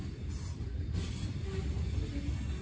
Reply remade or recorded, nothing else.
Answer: recorded